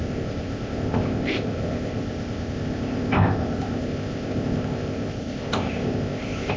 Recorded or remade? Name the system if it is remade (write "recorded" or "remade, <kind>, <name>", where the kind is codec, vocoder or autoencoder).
remade, codec, ZipCodec